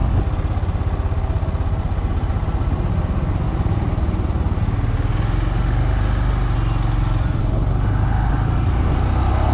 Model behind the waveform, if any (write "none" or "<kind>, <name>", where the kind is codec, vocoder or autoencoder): none